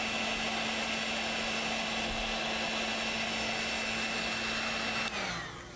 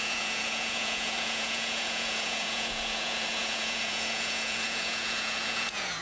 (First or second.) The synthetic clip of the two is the second